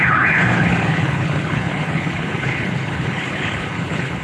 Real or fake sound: fake